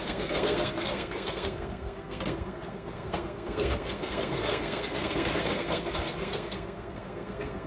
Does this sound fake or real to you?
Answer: fake